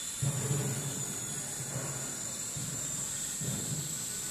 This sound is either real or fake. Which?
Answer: real